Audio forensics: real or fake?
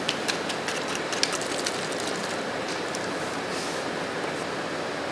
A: real